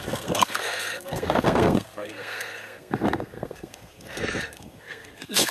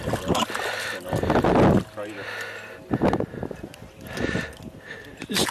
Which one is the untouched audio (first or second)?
second